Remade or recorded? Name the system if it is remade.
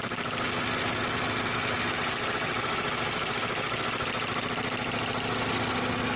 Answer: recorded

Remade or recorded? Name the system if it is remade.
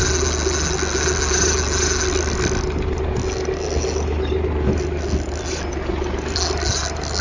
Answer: recorded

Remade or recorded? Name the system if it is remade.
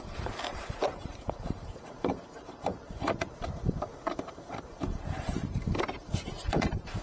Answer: remade, vocoder, BigVGAN v2